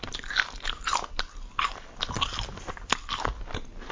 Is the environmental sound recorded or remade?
recorded